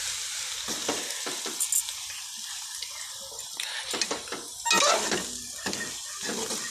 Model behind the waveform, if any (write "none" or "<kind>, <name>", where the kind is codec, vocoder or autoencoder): none